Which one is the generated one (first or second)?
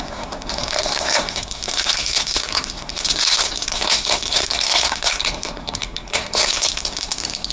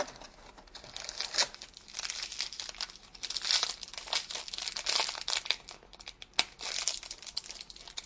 first